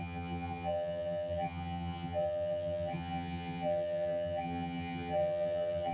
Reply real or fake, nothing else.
fake